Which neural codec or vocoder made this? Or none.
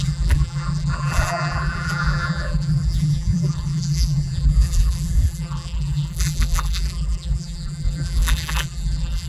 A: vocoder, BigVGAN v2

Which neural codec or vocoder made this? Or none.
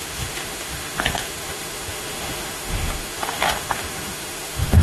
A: autoencoder, DAC-VAE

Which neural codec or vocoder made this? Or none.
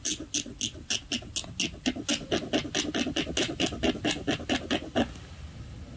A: none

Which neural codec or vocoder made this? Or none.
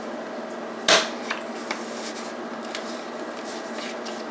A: none